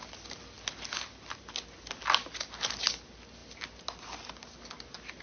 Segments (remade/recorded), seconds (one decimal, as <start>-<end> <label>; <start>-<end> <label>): 0.0-5.2 recorded